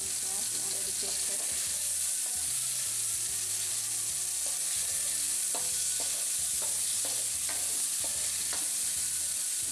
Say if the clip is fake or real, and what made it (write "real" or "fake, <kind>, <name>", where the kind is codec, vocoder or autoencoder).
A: real